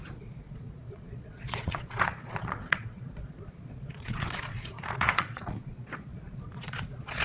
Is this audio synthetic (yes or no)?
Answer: yes